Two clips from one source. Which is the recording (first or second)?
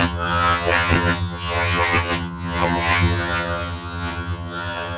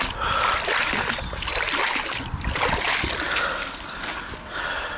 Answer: second